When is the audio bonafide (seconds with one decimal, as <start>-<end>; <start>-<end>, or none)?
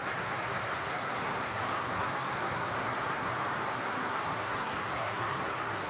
3.3-3.7